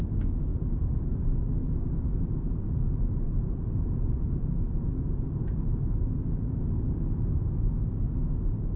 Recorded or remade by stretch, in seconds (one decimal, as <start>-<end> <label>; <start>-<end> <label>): 0.0-0.5 recorded; 0.5-1.2 remade; 1.2-1.6 recorded; 1.6-5.4 remade; 5.4-8.8 recorded